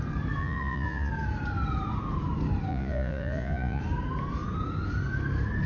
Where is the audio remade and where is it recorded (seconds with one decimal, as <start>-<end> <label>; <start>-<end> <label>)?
0.0-0.4 recorded; 0.4-1.1 remade; 1.1-2.7 recorded; 2.7-3.8 remade; 3.8-5.7 recorded